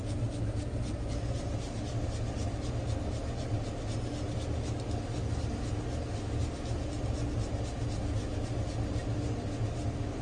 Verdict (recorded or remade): recorded